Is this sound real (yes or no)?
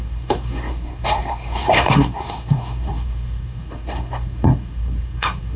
no